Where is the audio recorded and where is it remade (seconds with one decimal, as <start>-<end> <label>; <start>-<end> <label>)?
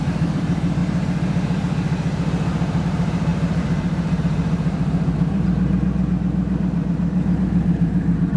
0.0-0.8 remade; 0.8-2.8 recorded; 2.8-8.4 remade